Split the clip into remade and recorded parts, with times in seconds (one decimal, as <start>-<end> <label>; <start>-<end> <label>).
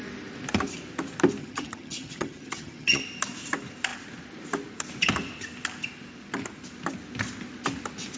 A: 0.0-1.4 recorded; 1.4-3.0 remade; 3.0-8.2 recorded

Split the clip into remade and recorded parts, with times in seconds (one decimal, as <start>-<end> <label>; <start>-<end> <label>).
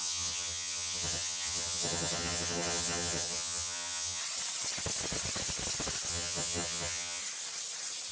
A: 0.0-4.2 remade; 4.2-6.1 recorded; 6.1-7.2 remade; 7.2-8.1 recorded